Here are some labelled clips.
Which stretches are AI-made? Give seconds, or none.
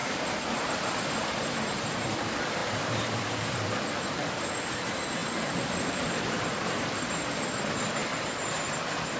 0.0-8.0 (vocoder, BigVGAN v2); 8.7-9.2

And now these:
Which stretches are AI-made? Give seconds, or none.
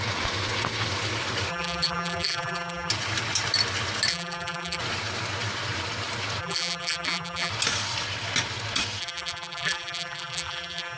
1.5-2.9 (vocoder, BigVGAN v2); 4.1-4.8; 6.4-7.5; 9.0-11.0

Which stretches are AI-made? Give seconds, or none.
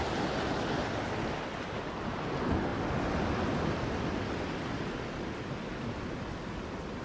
none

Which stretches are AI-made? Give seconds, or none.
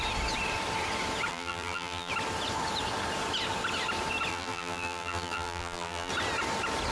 1.3-2.1 (vocoder, BigVGAN v2); 4.3-6.1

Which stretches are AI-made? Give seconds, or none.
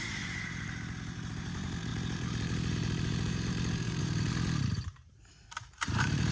0.0-6.3 (vocoder, BigVGAN v2)